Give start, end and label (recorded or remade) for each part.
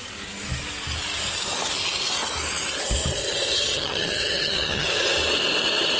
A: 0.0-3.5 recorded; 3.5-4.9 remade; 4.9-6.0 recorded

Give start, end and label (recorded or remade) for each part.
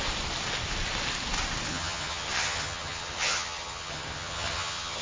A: 0.0-1.7 recorded; 1.7-5.0 remade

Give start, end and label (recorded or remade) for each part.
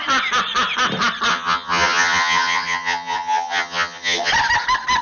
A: 0.0-1.3 recorded; 1.3-4.3 remade; 4.3-5.0 recorded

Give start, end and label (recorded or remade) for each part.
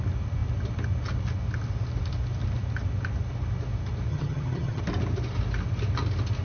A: 0.0-4.1 recorded; 4.1-4.8 remade; 4.8-6.4 recorded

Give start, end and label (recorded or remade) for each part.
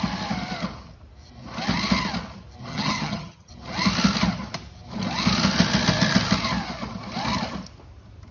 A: 0.0-2.7 recorded; 2.7-3.5 remade; 3.5-8.3 recorded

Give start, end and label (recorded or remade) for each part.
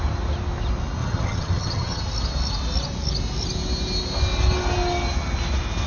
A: 0.0-1.0 recorded; 1.0-2.0 remade; 2.0-5.9 recorded